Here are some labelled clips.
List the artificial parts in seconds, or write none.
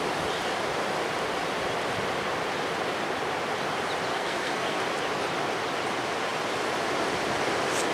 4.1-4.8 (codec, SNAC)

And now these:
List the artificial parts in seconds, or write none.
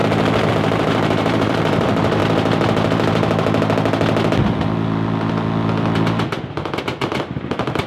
0.5-2.2 (vocoder, BigVGAN v2); 6.8-7.9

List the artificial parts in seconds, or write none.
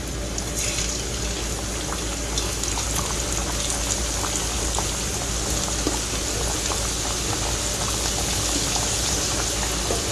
none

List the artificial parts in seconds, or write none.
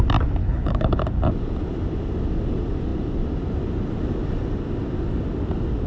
0.4-1.0 (codec, HILCodec)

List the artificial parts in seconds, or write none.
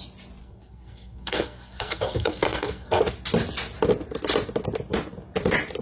0.4-3.0 (codec, SNAC)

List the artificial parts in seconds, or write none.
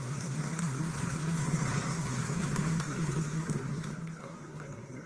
0.0-5.1 (codec, SNAC)